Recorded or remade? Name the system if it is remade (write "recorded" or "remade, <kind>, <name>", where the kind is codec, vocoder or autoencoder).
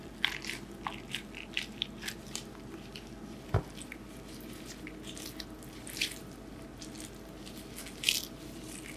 recorded